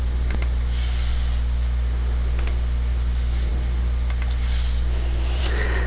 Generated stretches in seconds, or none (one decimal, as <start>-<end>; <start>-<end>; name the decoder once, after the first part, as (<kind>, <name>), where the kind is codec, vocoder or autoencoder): none